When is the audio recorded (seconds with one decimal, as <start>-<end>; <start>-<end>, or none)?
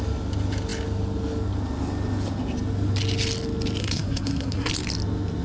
0.0-3.8; 4.7-5.4